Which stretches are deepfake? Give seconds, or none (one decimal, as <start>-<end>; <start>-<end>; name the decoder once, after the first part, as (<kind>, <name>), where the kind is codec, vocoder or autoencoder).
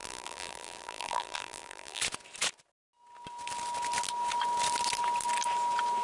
0.0-2.0 (vocoder, BigVGAN v2)